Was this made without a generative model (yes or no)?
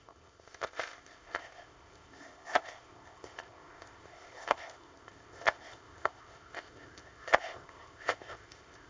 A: no